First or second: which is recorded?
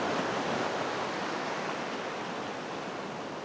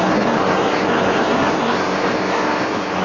first